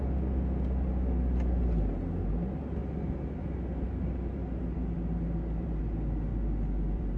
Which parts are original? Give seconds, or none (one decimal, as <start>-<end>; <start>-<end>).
0.0-2.8; 5.8-6.3